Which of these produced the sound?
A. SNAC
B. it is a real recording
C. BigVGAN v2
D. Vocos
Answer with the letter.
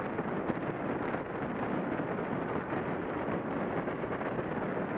B